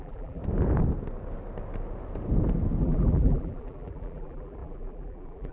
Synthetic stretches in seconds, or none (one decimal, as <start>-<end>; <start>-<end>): 0.0-0.4; 2.8-5.5